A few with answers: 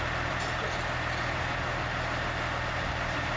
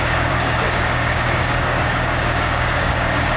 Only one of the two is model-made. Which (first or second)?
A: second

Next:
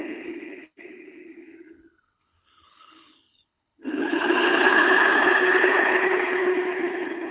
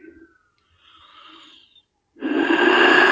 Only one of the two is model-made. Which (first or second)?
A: first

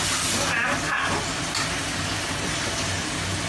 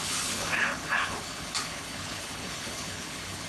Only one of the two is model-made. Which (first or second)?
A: second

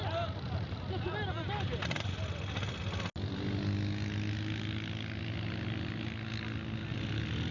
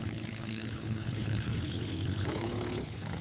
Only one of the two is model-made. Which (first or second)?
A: second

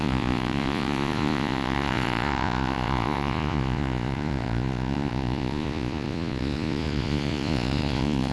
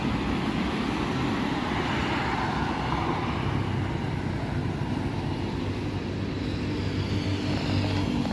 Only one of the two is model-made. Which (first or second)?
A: first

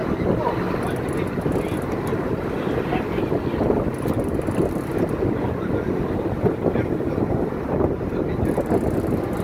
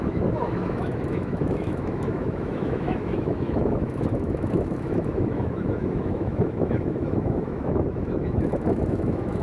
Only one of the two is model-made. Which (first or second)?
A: second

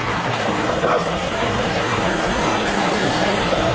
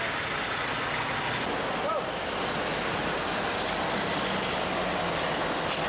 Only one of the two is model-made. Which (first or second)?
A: first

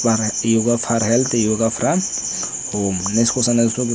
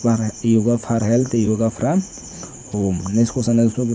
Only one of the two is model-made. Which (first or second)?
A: second